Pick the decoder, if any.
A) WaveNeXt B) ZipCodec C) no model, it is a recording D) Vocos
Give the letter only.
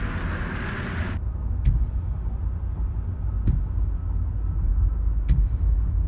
C